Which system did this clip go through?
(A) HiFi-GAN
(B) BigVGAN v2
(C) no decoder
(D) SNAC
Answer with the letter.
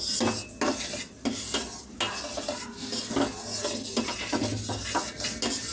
C